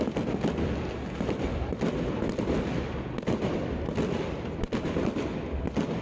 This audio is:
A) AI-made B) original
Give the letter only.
B